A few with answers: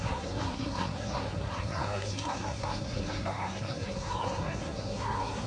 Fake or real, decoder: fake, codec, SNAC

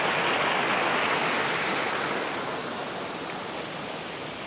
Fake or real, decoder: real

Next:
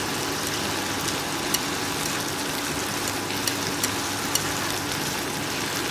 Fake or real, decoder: real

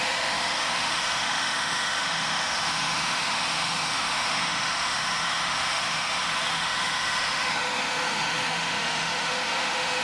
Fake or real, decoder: fake, autoencoder, DAC-VAE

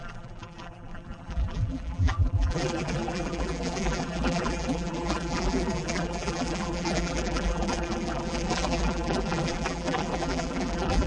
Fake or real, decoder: fake, vocoder, BigVGAN v2